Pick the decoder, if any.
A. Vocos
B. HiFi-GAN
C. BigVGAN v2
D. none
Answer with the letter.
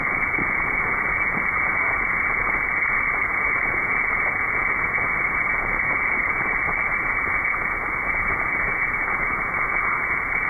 A